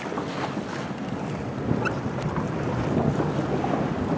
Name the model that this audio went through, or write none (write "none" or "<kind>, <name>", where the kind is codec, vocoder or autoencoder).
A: none